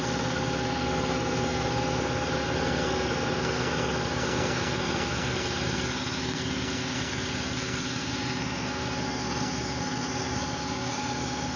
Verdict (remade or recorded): remade